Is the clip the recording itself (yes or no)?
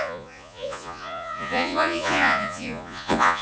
no